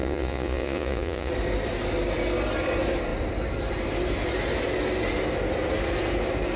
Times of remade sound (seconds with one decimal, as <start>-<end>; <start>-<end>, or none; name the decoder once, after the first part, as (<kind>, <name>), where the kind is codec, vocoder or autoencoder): 0.0-1.3 (vocoder, Vocos)